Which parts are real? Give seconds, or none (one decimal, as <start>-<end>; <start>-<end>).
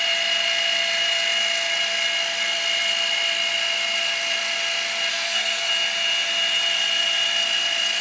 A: 0.0-5.1; 5.7-8.0